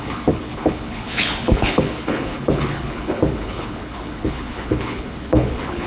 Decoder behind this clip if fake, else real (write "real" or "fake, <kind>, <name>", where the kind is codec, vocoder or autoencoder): fake, codec, HILCodec